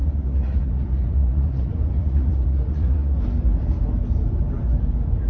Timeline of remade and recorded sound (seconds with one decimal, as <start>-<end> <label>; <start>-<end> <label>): 0.0-3.2 remade; 3.2-5.3 recorded